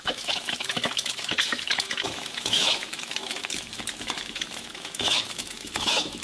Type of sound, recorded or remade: remade